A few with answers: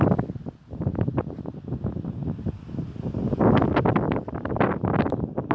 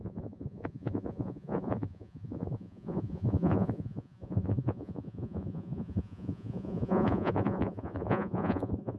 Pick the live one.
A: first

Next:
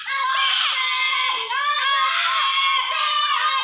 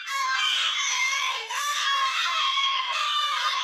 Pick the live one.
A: first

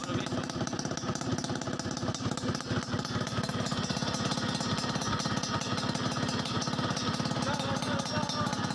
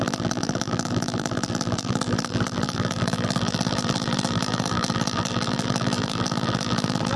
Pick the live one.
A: first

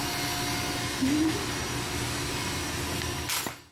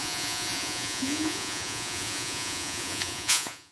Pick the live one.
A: first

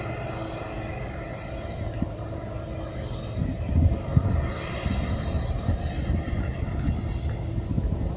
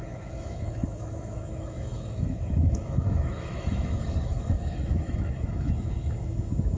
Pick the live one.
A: first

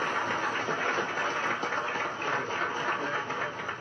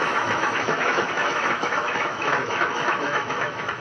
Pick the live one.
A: first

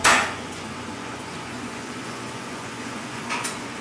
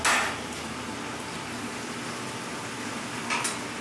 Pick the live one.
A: second